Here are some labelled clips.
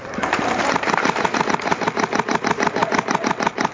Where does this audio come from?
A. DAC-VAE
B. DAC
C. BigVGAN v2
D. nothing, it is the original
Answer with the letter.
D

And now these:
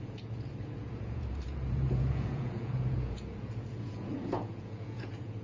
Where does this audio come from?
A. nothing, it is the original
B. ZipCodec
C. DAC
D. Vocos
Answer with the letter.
D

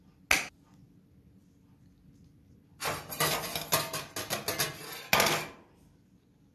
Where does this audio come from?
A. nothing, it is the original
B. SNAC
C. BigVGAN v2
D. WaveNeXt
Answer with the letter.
A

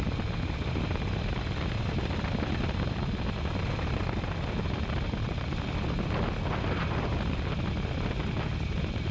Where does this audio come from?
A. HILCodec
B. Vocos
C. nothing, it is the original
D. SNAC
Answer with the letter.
C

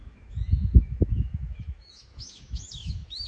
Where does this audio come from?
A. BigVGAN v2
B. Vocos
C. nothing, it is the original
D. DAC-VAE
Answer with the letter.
D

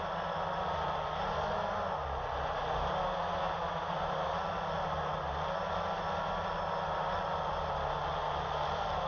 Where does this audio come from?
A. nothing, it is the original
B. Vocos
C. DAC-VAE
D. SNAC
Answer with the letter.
A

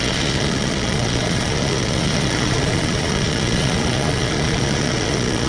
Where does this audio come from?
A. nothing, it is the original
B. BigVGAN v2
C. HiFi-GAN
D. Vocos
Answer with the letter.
D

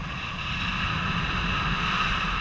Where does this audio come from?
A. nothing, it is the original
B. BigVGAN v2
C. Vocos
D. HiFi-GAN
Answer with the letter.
A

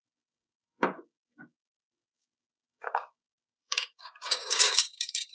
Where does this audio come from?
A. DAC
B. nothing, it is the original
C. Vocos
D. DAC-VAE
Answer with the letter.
A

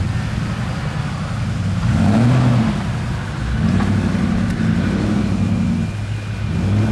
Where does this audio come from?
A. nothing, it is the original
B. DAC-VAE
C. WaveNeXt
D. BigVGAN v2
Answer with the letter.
A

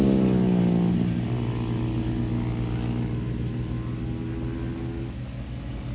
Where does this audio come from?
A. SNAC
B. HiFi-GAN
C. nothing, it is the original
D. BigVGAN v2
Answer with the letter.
C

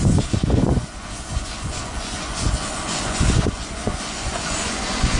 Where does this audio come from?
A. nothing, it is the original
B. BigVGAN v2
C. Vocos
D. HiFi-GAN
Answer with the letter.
C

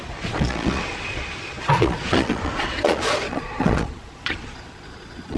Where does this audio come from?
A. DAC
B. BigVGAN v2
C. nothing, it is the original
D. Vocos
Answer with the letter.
D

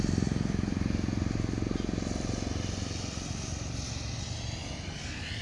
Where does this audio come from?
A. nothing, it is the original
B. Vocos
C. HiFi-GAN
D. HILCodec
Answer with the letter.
A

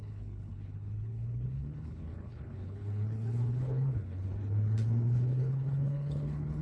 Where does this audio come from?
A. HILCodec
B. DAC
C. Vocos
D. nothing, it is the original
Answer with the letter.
A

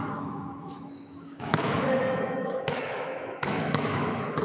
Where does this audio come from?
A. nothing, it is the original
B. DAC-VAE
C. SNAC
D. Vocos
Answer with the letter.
B